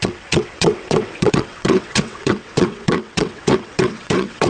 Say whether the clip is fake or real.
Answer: fake